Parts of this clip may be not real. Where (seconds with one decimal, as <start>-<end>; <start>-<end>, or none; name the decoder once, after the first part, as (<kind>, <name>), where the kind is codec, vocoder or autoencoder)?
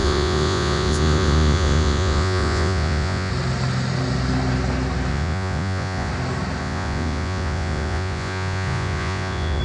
0.0-3.3 (vocoder, Vocos); 5.1-6.1; 6.6-9.6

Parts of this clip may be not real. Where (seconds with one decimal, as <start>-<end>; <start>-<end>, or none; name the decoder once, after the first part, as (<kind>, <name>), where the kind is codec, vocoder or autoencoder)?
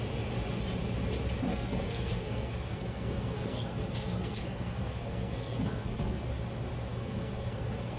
1.5-6.3 (codec, SNAC); 6.9-8.0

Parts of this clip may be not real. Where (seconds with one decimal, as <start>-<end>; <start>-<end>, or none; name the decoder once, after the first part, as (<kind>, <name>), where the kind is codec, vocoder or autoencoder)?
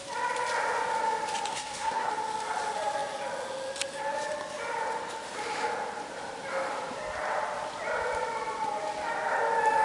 1.5-2.1 (codec, SNAC)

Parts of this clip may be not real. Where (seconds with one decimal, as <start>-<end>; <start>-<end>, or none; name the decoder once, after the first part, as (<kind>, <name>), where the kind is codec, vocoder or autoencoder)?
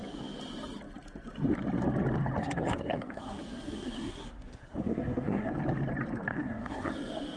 2.4-5.5 (codec, SNAC); 6.3-6.9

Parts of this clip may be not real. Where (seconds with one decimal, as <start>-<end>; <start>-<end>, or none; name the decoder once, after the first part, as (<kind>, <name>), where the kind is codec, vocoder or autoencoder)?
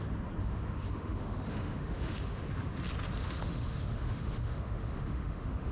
0.4-2.4 (autoencoder, DAC-VAE); 3.2-5.7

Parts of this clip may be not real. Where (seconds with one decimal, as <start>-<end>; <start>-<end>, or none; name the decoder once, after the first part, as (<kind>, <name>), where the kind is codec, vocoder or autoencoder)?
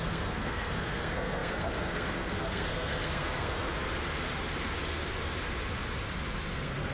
0.0-3.7 (codec, SNAC); 6.5-6.9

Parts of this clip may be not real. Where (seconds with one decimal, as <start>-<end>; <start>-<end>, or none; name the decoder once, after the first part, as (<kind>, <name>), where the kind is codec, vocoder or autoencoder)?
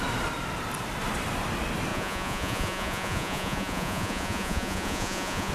1.9-5.5 (vocoder, Vocos)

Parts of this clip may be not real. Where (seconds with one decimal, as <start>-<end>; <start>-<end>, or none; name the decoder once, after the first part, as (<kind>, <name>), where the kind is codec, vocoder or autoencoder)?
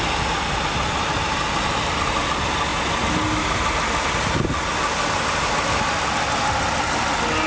none